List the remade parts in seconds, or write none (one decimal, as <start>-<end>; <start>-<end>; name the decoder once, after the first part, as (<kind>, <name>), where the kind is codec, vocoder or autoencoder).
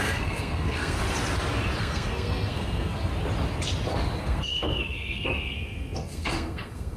0.0-1.0 (codec, SNAC); 1.8-3.1; 4.2-7.0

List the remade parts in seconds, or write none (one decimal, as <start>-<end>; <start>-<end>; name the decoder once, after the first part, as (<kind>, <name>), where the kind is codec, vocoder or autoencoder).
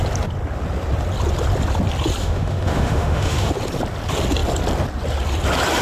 2.2-3.5 (autoencoder, DAC-VAE)